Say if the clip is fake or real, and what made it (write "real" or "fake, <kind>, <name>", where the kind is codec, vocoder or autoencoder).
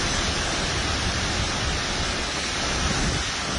real